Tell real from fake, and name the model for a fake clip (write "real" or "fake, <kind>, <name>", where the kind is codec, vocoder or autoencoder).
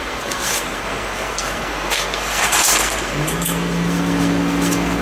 fake, codec, SNAC